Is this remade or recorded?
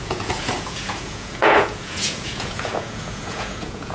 remade